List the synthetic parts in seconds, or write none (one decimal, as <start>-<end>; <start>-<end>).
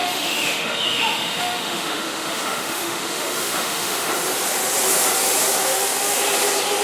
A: 0.0-4.1; 5.7-6.2